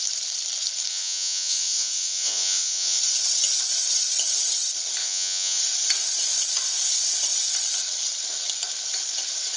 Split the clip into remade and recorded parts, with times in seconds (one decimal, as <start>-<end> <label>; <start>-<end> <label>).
0.0-0.9 recorded; 0.9-3.0 remade; 3.0-5.0 recorded; 5.0-5.6 remade; 5.6-9.6 recorded